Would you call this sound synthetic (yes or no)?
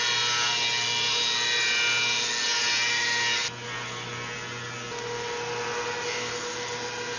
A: no